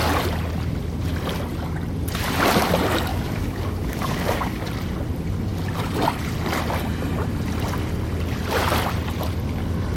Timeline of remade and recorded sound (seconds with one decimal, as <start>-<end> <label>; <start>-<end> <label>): 0.0-3.1 recorded; 3.1-4.7 remade; 4.7-10.0 recorded